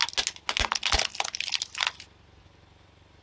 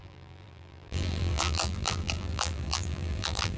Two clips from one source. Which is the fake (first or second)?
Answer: second